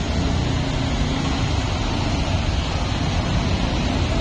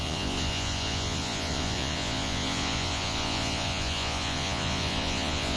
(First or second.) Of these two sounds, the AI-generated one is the second